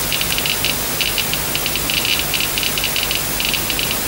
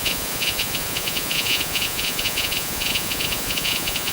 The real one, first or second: first